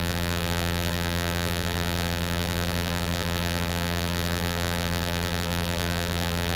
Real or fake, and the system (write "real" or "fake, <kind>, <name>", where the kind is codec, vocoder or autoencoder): fake, vocoder, BigVGAN v2